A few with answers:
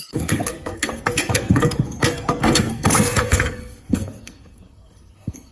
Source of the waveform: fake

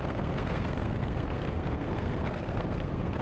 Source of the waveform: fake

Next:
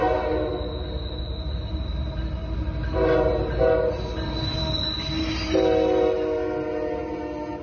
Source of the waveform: real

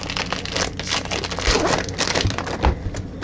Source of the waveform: real